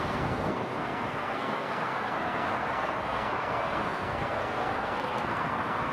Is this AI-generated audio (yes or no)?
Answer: yes